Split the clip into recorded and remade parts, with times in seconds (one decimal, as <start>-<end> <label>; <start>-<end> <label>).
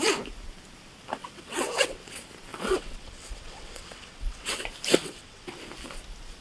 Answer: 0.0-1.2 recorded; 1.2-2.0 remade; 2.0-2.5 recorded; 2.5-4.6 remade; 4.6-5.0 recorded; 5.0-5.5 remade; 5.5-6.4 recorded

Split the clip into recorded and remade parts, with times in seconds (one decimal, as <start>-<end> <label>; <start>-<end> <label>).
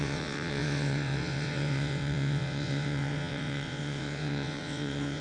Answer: 0.0-5.2 remade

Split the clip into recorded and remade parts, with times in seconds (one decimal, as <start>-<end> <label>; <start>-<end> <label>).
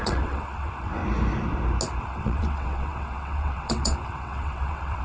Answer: 0.0-1.0 remade; 1.0-2.0 recorded; 2.0-5.0 remade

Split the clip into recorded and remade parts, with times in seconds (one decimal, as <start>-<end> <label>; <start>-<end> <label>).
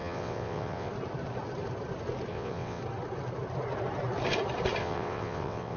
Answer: 0.0-0.9 remade; 0.9-2.3 recorded; 2.3-2.8 remade; 2.8-4.8 recorded; 4.8-5.8 remade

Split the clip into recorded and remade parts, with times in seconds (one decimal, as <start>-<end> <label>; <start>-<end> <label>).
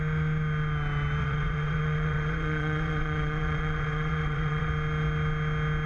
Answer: 0.0-1.2 recorded; 1.2-4.7 remade; 4.7-5.9 recorded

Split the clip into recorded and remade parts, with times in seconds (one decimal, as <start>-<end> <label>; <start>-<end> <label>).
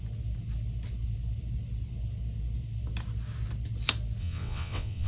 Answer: 0.0-4.2 recorded; 4.2-5.1 remade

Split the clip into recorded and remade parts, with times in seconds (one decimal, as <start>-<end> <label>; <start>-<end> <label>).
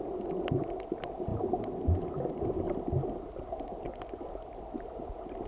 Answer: 0.0-5.5 recorded